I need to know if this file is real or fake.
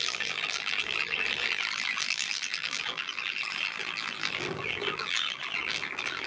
fake